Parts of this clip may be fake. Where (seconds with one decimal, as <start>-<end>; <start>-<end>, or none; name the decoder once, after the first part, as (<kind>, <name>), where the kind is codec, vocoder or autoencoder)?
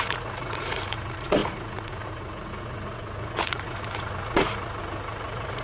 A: 0.0-5.6 (vocoder, Vocos)